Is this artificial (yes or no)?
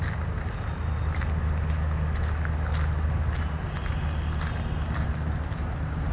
no